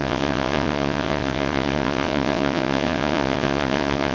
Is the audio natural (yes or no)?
no